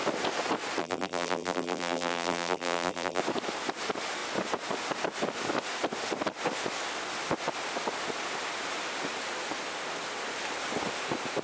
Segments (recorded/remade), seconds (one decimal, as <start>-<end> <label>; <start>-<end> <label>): 0.0-0.8 recorded; 0.8-3.2 remade; 3.2-11.4 recorded